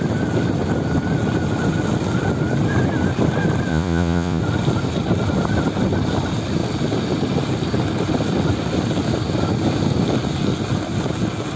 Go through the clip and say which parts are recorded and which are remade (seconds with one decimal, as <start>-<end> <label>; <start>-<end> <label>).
0.0-3.7 recorded; 3.7-4.4 remade; 4.4-11.6 recorded